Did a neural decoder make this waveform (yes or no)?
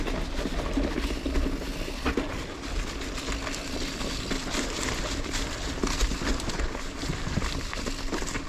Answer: no